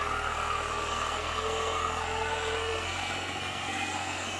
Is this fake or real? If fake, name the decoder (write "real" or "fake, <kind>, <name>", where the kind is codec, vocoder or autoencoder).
fake, codec, SNAC